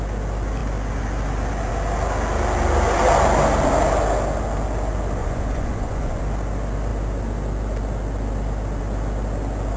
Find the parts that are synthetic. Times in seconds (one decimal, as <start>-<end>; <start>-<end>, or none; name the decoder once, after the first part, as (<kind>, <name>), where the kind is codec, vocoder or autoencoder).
5.2-6.2 (vocoder, Vocos)